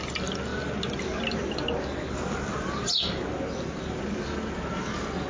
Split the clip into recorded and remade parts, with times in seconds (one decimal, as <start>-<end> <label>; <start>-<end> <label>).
0.0-5.3 recorded